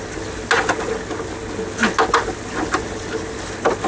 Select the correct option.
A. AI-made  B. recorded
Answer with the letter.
B